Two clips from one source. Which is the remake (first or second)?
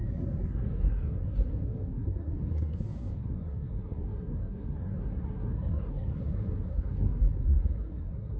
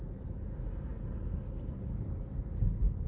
first